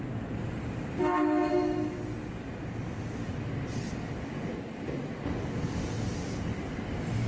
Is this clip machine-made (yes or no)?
no